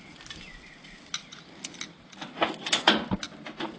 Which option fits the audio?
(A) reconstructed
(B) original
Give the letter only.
B